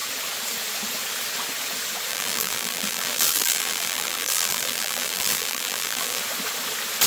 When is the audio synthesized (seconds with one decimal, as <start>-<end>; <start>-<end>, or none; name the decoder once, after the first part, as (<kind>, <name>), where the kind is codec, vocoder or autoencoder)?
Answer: 2.1-6.2 (vocoder, BigVGAN v2)